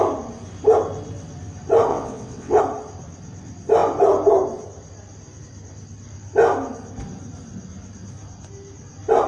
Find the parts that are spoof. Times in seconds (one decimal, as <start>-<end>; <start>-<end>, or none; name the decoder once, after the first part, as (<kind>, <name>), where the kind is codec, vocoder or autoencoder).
1.9-2.6 (vocoder, WaveNeXt)